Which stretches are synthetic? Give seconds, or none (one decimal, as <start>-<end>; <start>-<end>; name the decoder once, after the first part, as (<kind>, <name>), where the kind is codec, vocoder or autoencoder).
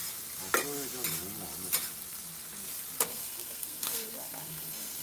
3.0-5.0 (codec, SNAC)